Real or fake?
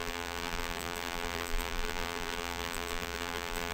fake